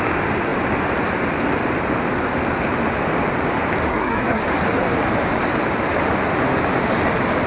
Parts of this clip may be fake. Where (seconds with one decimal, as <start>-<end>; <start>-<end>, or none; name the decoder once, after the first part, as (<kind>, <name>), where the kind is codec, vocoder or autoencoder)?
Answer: 3.9-4.4 (codec, SNAC)